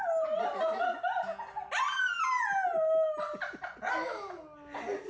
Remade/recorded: recorded